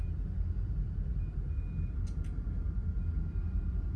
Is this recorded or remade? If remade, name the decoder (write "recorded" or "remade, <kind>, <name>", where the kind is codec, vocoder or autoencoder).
recorded